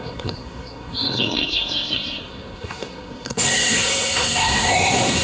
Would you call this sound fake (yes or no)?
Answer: yes